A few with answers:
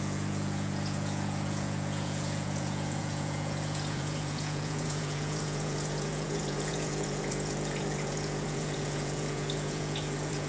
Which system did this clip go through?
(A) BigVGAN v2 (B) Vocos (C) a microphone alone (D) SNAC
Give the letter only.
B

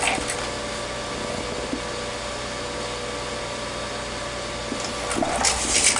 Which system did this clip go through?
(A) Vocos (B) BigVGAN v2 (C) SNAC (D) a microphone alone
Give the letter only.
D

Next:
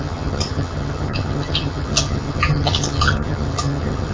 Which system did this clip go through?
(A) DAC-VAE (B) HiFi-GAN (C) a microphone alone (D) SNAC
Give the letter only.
B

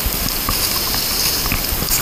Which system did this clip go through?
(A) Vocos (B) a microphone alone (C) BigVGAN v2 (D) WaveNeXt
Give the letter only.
B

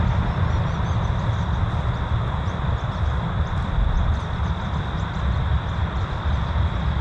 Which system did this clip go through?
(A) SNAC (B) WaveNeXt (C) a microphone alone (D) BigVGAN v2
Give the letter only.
D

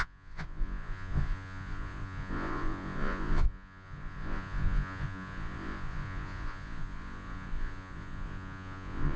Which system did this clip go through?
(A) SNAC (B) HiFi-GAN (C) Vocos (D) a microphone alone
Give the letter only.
C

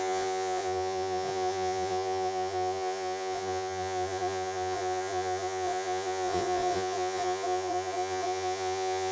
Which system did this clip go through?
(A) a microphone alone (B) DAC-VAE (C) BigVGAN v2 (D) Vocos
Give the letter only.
D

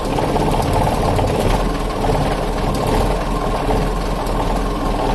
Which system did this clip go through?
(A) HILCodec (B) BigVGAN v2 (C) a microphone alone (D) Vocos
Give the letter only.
C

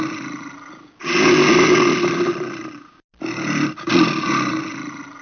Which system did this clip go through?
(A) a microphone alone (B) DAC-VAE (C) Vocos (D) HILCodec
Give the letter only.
A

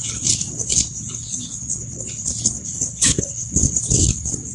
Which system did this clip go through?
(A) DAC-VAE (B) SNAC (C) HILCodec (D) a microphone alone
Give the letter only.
C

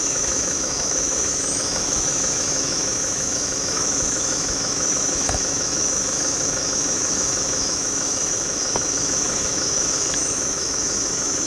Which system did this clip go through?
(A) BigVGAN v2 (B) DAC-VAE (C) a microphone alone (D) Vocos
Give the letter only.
B